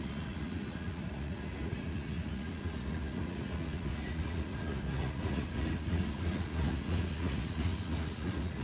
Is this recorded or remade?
remade